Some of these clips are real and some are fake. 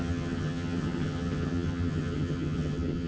fake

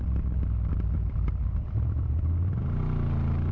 fake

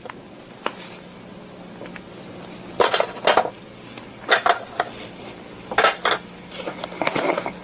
real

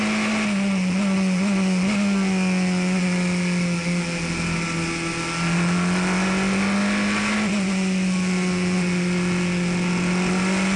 real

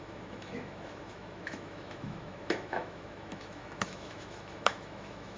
fake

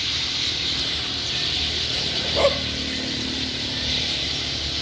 fake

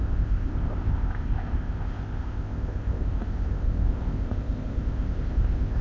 fake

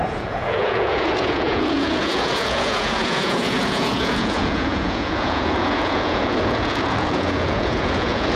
fake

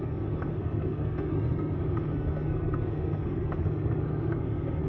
fake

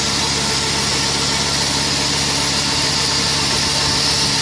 real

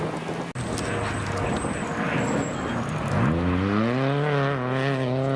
real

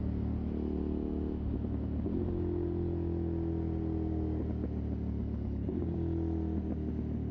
real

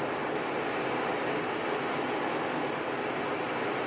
real